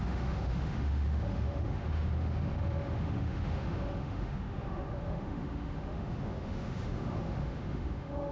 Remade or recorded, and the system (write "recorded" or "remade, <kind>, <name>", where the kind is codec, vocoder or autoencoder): remade, autoencoder, DAC-VAE